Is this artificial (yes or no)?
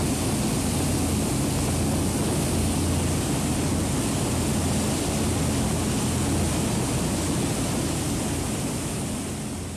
no